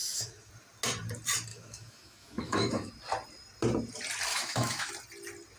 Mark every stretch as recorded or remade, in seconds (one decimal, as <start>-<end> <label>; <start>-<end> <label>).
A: 0.0-0.5 remade; 0.5-1.5 recorded; 1.5-2.9 remade; 2.9-4.3 recorded; 4.3-4.9 remade; 4.9-5.6 recorded